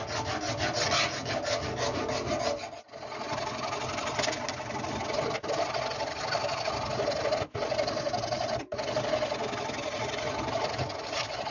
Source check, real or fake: real